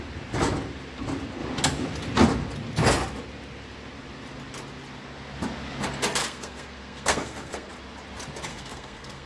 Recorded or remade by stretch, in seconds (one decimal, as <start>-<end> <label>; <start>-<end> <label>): 0.0-6.2 recorded; 6.2-7.7 remade; 7.7-8.5 recorded; 8.5-9.3 remade